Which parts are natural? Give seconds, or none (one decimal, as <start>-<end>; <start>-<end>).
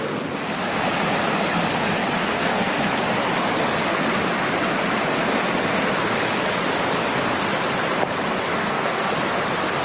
0.0-2.2; 2.7-8.6; 9.1-9.8